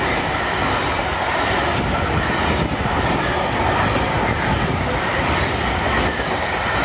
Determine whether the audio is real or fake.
real